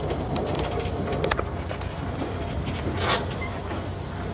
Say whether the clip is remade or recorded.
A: recorded